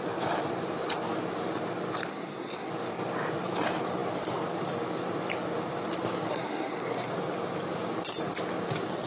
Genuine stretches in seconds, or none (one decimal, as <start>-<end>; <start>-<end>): 0.0-2.1; 2.7-6.3; 7.1-9.1